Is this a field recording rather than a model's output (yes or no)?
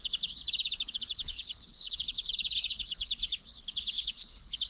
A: no